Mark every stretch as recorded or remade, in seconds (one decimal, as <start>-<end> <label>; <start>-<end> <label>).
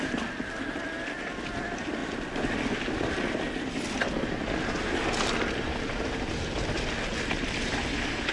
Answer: 0.0-8.3 recorded